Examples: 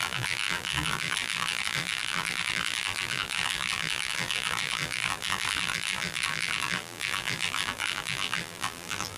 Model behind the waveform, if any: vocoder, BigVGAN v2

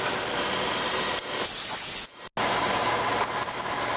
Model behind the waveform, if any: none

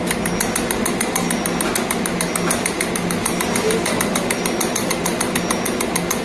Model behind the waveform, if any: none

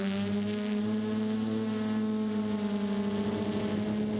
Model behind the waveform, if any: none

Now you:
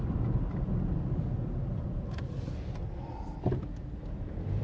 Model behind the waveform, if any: none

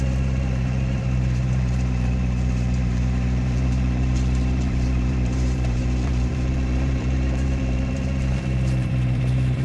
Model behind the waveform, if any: vocoder, BigVGAN v2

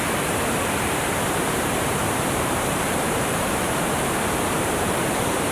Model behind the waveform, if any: vocoder, BigVGAN v2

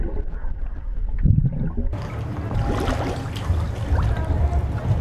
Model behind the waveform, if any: vocoder, BigVGAN v2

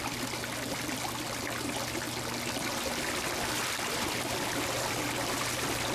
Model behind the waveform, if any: none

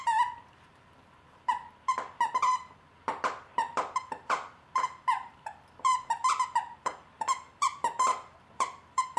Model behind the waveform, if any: vocoder, BigVGAN v2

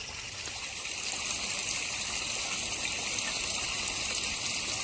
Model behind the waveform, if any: none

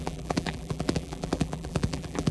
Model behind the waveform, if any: vocoder, BigVGAN v2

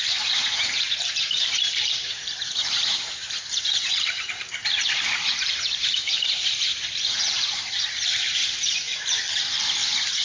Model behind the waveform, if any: vocoder, BigVGAN v2